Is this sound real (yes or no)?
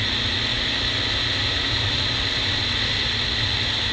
yes